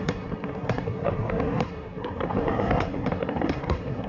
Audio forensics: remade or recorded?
remade